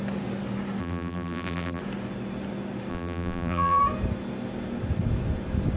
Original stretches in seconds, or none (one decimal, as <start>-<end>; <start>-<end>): 0.0-0.8; 1.8-2.9; 3.8-5.8